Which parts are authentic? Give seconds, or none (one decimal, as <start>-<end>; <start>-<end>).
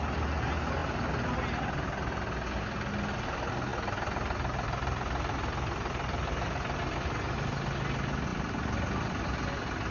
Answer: 0.0-3.7; 6.8-8.3